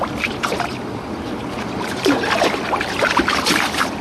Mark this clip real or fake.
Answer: real